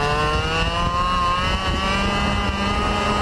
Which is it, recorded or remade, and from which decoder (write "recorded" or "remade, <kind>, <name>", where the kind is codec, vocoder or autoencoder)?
recorded